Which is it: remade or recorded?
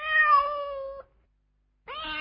recorded